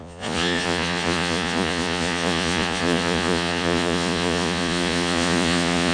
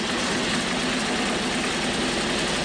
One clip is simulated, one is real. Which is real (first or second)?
second